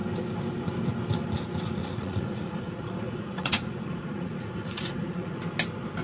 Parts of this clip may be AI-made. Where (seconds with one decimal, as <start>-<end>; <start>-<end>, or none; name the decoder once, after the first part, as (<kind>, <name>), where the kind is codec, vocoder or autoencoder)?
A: 1.8-5.4 (vocoder, Vocos)